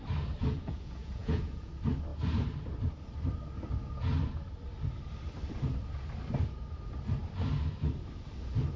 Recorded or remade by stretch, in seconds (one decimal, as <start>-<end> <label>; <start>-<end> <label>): 0.0-0.4 recorded; 0.4-1.7 remade; 1.7-8.8 recorded